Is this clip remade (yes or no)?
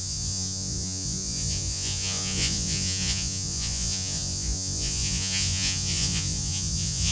yes